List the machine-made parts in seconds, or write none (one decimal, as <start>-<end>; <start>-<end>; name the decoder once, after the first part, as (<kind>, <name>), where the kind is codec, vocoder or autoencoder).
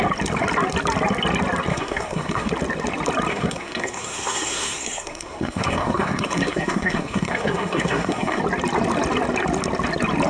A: 1.7-2.5 (codec, SNAC); 3.3-8.4